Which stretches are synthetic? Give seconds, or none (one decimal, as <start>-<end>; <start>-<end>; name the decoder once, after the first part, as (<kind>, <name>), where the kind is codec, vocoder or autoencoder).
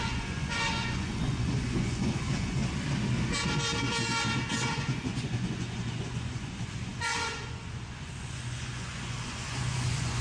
0.0-2.6 (vocoder, Vocos); 4.7-10.2